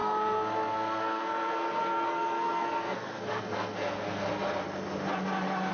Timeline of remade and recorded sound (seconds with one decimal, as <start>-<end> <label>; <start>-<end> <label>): 0.0-4.3 remade; 4.3-5.7 recorded